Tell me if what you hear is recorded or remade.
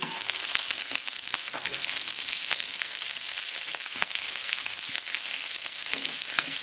remade